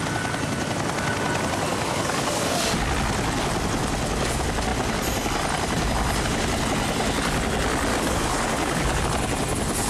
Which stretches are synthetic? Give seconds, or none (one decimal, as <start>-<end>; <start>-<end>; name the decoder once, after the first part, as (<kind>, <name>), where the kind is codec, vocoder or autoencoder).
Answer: 1.7-2.6 (codec, DAC); 7.9-9.0